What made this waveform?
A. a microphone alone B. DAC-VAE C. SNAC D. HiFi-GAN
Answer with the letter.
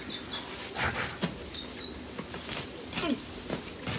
A